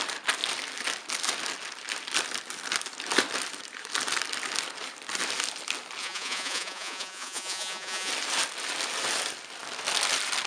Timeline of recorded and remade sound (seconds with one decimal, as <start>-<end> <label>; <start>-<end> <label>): 0.0-6.0 recorded; 6.0-8.1 remade; 8.1-10.5 recorded

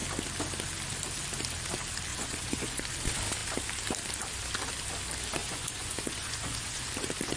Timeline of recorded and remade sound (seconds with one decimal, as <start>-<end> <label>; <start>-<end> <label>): 0.0-2.1 recorded; 2.1-2.9 remade; 2.9-5.4 recorded; 5.4-6.9 remade; 6.9-7.4 recorded

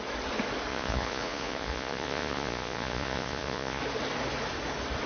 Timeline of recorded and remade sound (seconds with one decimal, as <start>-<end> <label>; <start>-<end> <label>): 0.0-0.7 recorded; 0.7-3.8 remade; 3.8-5.1 recorded